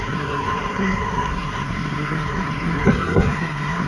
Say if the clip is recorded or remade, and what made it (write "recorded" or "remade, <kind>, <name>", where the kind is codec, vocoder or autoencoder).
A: remade, codec, SNAC